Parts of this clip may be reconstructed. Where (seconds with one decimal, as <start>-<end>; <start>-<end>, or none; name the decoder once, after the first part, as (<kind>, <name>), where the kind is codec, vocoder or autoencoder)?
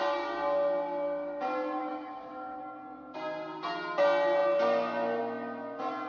1.8-2.6 (autoencoder, DAC-VAE)